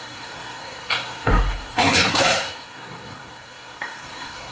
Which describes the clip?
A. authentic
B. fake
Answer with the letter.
B